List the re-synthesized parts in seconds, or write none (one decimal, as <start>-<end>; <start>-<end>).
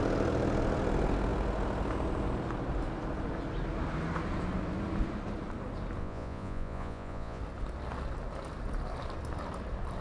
6.0-7.4